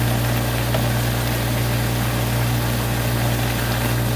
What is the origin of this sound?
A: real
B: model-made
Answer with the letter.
A